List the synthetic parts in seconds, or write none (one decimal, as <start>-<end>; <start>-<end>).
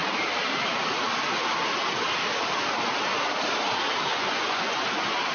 4.1-4.8